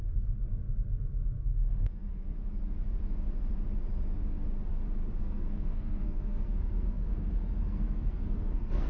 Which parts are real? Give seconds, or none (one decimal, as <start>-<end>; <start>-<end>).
0.6-1.4; 2.4-5.2